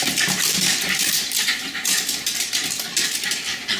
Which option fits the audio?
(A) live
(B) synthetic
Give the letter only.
A